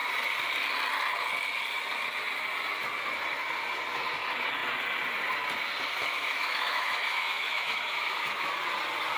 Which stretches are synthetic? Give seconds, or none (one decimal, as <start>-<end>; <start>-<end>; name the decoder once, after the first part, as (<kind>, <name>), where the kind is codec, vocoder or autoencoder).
6.0-8.5 (autoencoder, DAC-VAE)